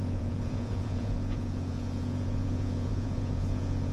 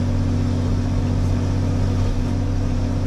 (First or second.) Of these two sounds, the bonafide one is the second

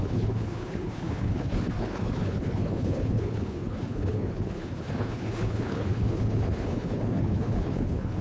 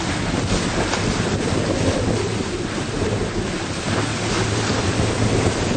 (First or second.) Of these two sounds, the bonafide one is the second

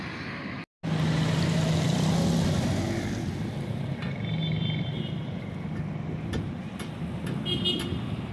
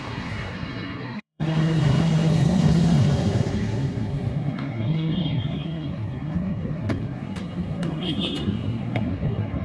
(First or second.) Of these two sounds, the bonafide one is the first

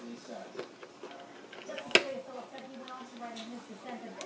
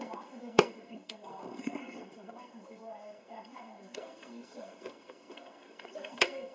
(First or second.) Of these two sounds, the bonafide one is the first